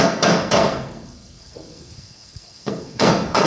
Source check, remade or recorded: remade